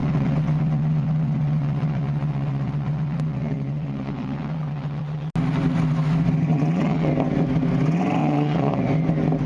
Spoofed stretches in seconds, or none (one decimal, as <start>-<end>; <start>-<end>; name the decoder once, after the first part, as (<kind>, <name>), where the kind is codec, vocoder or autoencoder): 0.0-5.3 (vocoder, WaveNeXt); 6.5-7.1; 8.2-8.8